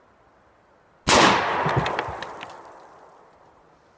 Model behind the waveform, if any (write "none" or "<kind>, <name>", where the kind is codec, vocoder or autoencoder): none